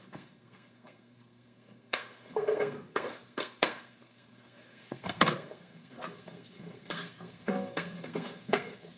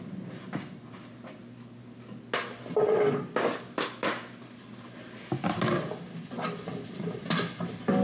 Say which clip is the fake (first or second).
first